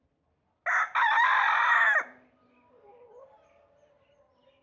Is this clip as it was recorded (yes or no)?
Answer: yes